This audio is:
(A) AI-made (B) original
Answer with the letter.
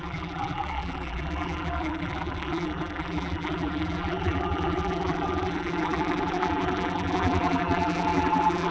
A